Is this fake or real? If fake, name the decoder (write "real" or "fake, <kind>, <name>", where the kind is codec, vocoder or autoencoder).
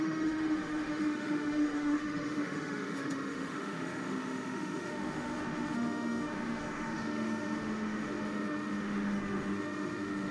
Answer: fake, autoencoder, DAC-VAE